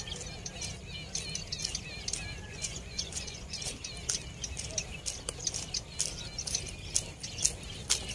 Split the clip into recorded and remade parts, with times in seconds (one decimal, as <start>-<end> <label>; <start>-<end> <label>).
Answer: 0.0-2.5 recorded; 2.5-3.8 remade; 3.8-8.1 recorded